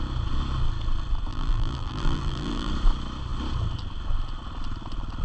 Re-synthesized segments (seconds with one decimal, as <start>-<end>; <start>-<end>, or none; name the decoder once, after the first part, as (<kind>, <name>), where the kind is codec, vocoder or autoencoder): 1.3-2.7 (vocoder, BigVGAN v2)